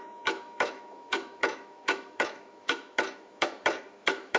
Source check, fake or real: fake